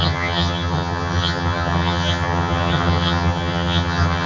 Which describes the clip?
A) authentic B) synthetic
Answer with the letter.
B